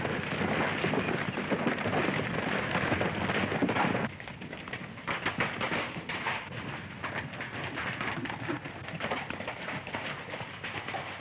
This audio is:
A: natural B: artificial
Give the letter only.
A